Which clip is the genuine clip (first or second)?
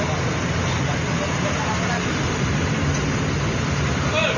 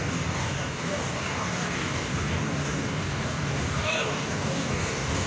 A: first